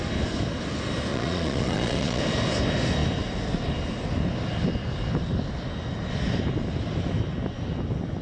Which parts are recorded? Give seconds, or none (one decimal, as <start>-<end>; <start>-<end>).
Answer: 0.0-1.1; 2.2-8.2